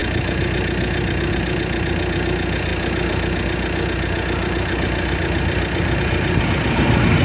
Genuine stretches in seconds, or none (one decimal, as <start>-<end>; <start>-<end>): 0.0-7.2